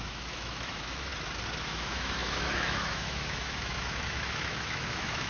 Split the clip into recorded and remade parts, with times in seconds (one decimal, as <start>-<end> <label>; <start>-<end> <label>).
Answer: 0.0-1.1 remade; 1.1-1.6 recorded; 1.6-5.3 remade